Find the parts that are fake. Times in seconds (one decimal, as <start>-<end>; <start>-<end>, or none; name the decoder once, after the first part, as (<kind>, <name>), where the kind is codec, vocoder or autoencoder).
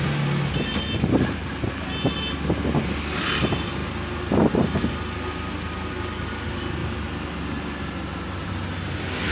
none